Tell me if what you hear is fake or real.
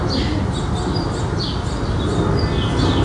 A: real